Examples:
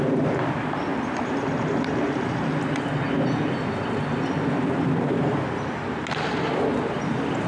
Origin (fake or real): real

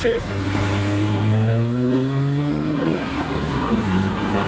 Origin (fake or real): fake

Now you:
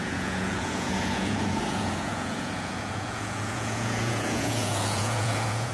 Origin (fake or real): fake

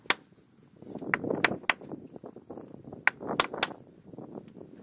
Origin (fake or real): real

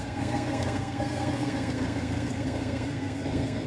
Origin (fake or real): fake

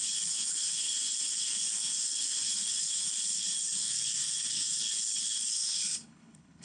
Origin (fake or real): fake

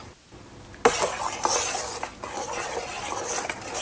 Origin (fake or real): real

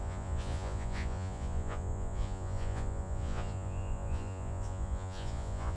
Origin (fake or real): fake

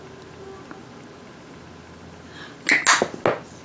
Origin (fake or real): real